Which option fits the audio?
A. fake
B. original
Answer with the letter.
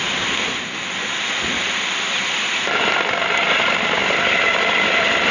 B